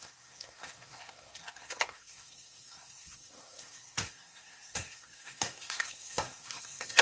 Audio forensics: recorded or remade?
remade